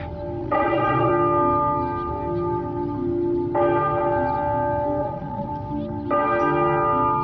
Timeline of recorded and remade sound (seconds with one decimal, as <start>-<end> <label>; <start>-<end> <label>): 0.0-0.4 recorded; 0.4-1.1 remade; 1.1-5.0 recorded; 5.0-5.5 remade; 5.5-7.2 recorded